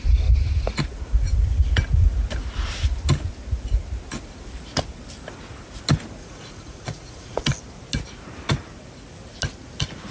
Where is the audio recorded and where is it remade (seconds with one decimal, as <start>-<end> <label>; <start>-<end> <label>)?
0.0-6.2 recorded; 6.2-7.4 remade; 7.4-10.1 recorded